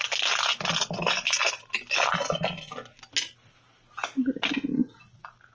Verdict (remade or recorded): recorded